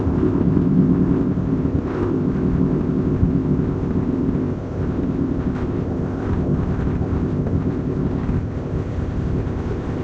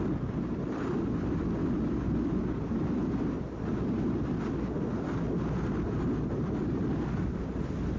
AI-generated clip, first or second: first